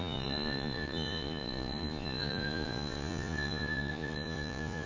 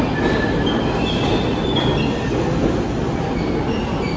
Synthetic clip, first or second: first